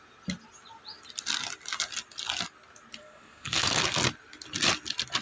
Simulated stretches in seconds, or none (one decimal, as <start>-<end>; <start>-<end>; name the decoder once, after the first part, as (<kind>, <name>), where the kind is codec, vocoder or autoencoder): 3.0-3.8 (codec, SNAC)